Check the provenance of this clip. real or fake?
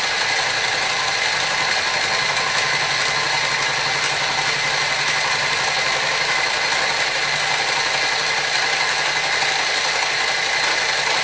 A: real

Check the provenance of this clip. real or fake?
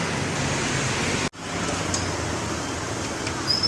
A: real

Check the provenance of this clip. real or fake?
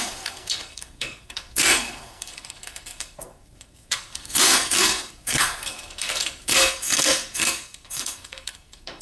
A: fake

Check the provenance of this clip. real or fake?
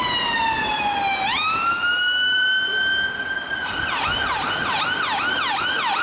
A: real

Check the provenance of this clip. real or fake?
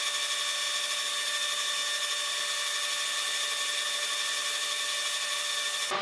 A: real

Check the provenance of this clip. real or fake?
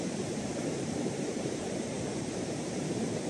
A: fake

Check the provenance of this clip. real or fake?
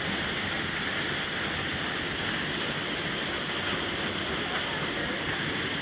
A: real